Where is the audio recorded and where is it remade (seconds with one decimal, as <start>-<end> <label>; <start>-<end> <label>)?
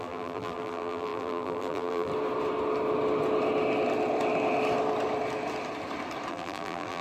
0.0-2.1 remade; 2.1-6.3 recorded; 6.3-7.0 remade